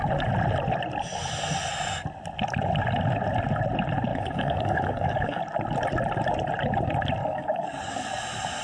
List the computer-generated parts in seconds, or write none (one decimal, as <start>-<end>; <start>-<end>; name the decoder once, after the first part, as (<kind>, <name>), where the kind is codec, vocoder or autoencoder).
4.1-5.4 (codec, DAC); 7.2-8.2